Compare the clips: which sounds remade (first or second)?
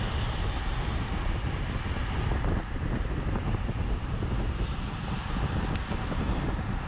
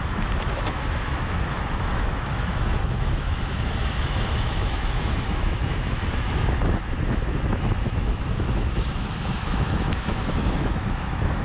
second